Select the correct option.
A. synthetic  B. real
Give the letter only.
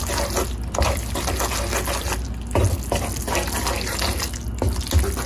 B